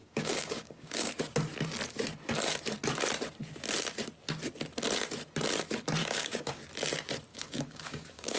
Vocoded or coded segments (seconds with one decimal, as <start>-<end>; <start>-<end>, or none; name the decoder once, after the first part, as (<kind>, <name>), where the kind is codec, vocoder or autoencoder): 0.0-1.1 (codec, DAC); 6.0-6.6; 7.3-8.4